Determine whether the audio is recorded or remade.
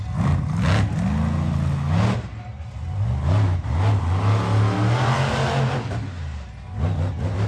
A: recorded